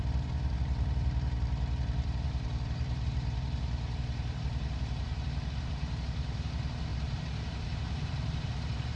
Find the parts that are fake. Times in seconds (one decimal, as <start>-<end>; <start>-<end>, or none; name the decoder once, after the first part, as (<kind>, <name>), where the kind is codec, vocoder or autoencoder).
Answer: 0.0-9.0 (vocoder, BigVGAN v2)